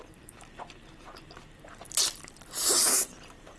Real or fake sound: fake